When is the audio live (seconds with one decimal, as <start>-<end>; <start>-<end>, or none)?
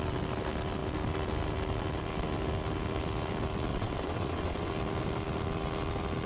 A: 0.0-3.7; 4.7-6.3